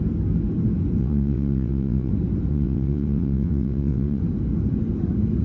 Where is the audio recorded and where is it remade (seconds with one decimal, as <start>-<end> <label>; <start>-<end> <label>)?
0.0-1.0 recorded; 1.0-2.1 remade; 2.1-2.5 recorded; 2.5-4.2 remade; 4.2-5.4 recorded